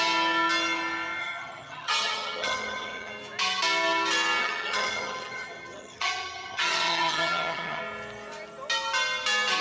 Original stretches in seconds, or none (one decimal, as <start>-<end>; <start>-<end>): 0.0-1.2; 3.1-4.4; 7.8-9.6